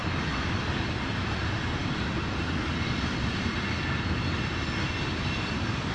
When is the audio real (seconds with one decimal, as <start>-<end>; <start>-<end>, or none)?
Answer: 0.0-5.9